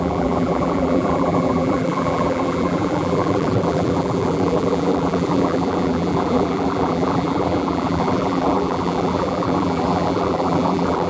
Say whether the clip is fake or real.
fake